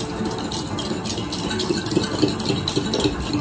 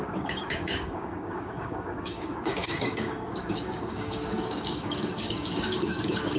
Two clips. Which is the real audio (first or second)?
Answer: first